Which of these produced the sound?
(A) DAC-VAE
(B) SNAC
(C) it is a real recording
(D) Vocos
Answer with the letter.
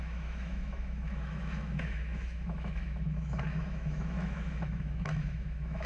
A